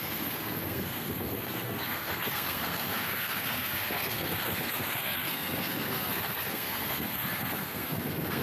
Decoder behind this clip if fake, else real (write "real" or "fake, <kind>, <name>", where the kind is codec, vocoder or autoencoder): fake, codec, SNAC